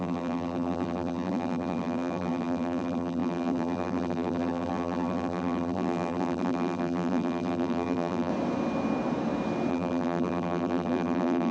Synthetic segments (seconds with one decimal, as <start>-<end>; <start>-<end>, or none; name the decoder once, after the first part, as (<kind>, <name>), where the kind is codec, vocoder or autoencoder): 0.0-8.3 (vocoder, BigVGAN v2); 9.7-11.5